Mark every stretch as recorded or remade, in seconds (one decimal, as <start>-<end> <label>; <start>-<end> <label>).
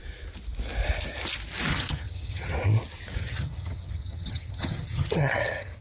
0.0-1.7 recorded; 1.7-2.5 remade; 2.5-3.2 recorded; 3.2-5.8 remade